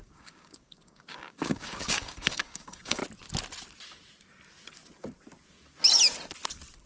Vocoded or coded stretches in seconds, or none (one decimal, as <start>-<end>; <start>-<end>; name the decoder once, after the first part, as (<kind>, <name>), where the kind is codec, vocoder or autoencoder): 0.0-3.0 (codec, DAC)